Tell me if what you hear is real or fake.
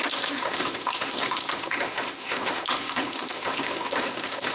fake